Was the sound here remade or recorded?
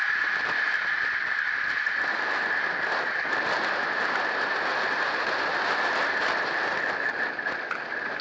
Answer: recorded